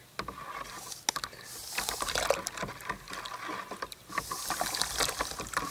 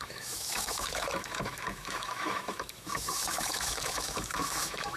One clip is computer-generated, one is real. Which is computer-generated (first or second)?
second